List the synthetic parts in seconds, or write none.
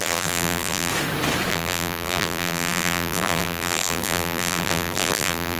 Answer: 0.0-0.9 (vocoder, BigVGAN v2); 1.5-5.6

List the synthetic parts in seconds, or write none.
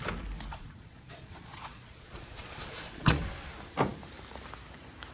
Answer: 0.5-3.2 (vocoder, Vocos)